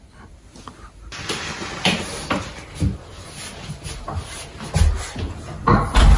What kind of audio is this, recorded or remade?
recorded